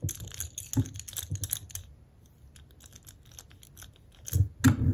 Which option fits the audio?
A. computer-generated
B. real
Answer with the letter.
B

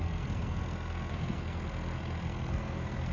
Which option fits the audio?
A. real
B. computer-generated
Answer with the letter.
B